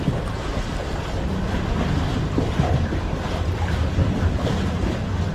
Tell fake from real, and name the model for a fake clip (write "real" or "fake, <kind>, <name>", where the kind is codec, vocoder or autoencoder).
real